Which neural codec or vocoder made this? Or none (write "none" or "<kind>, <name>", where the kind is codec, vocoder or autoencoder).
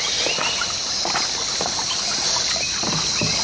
none